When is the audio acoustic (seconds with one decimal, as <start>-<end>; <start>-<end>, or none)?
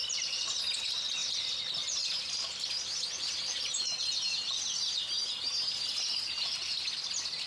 0.0-7.5